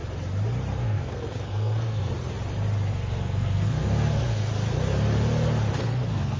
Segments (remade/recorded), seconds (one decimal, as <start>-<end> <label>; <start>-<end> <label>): 0.0-0.8 recorded; 0.8-2.1 remade; 2.1-2.9 recorded; 2.9-4.5 remade; 4.5-5.8 recorded; 5.8-6.4 remade